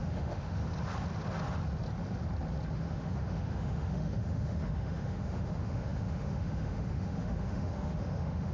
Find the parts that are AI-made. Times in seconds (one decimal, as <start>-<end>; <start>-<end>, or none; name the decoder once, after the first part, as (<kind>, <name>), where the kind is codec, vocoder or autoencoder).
0.0-0.6 (autoencoder, DAC-VAE); 2.7-8.5